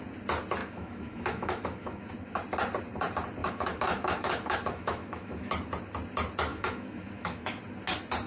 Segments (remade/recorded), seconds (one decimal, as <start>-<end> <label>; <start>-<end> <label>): 0.0-0.6 recorded; 0.6-2.1 remade; 2.1-3.4 recorded; 3.4-5.5 remade; 5.5-6.5 recorded; 6.5-7.6 remade; 7.6-8.3 recorded

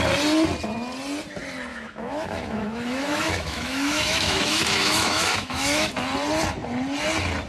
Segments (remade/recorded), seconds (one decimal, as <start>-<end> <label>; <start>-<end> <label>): 0.0-1.7 recorded; 1.7-5.9 remade; 5.9-7.5 recorded

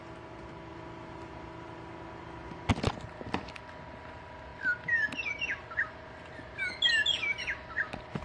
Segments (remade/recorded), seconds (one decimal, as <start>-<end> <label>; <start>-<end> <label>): 0.0-8.2 recorded

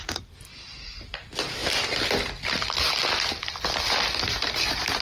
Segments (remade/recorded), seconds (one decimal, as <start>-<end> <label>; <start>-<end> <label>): 0.0-5.0 recorded

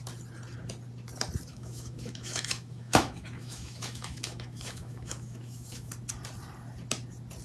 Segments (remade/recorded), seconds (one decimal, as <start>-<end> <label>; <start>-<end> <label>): 0.0-1.5 recorded; 1.5-5.9 remade; 5.9-7.4 recorded

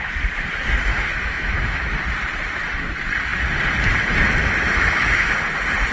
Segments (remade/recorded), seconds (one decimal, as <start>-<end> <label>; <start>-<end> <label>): 0.0-0.9 recorded; 0.9-2.0 remade; 2.0-4.4 recorded; 4.4-5.4 remade; 5.4-5.9 recorded